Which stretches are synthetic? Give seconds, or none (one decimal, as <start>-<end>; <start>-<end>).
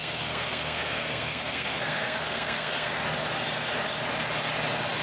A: 0.0-3.0